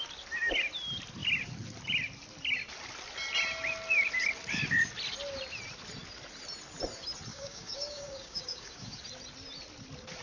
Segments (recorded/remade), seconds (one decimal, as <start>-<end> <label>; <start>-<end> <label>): 0.0-7.3 recorded; 7.3-9.0 remade; 9.0-10.2 recorded